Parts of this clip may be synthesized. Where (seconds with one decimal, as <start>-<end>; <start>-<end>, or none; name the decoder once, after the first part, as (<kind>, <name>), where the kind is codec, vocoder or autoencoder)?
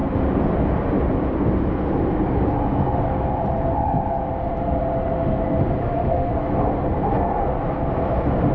5.8-6.3 (autoencoder, DAC-VAE)